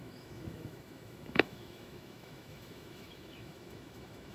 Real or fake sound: fake